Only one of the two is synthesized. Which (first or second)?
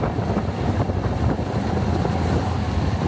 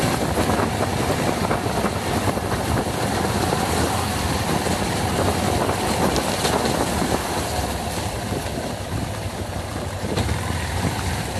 second